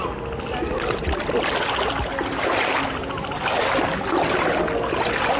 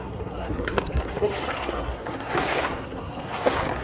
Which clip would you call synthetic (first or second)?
second